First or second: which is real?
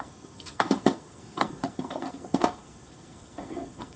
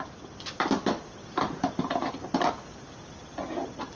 second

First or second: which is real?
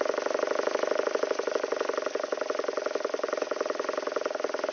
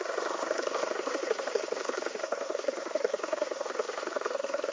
first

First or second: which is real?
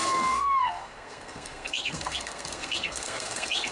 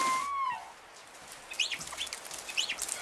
second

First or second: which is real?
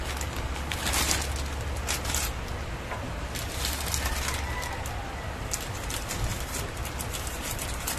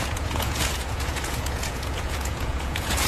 first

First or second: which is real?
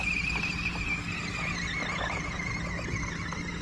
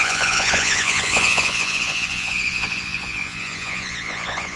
first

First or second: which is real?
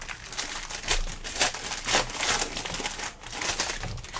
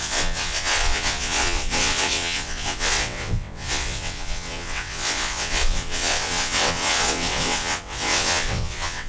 first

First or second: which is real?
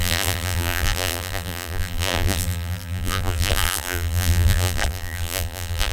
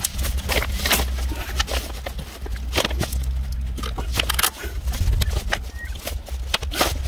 second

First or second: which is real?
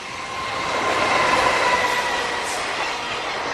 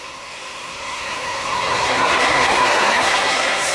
first